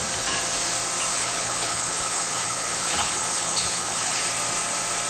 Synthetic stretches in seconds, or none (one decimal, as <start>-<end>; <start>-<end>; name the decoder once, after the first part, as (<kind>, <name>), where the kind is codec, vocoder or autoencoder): 1.1-4.2 (codec, HILCodec)